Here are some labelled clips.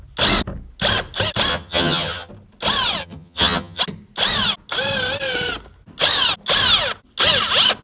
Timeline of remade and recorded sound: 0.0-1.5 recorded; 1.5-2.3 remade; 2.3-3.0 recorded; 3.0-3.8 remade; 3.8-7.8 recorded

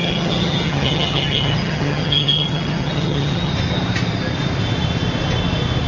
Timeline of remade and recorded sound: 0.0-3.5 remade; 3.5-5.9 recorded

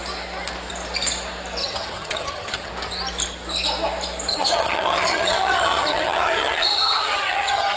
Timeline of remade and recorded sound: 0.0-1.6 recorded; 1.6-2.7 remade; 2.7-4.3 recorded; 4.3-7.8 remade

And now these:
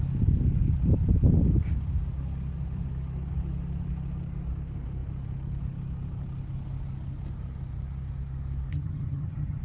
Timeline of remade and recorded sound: 0.0-8.7 recorded; 8.7-9.6 remade

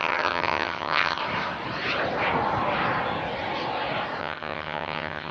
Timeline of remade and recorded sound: 0.0-1.2 remade; 1.2-4.2 recorded; 4.2-5.3 remade

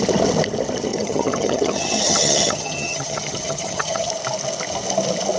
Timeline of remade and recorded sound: 0.0-0.9 recorded; 0.9-4.1 remade; 4.1-5.4 recorded

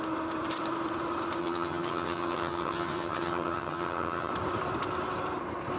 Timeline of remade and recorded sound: 0.0-1.4 recorded; 1.4-4.3 remade; 4.3-5.8 recorded